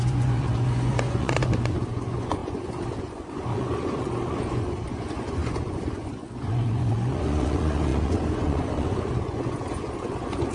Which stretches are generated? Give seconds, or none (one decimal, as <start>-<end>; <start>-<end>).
0.0-10.5